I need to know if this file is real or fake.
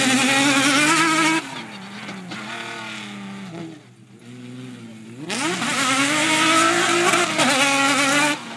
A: real